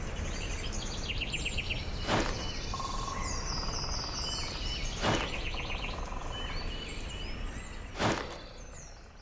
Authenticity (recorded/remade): recorded